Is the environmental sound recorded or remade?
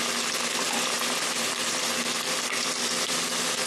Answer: recorded